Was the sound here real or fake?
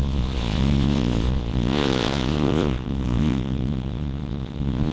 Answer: fake